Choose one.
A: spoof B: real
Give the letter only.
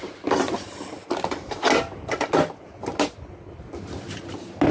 B